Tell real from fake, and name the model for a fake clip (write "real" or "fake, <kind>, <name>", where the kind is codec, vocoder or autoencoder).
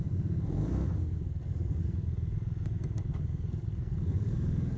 fake, codec, SNAC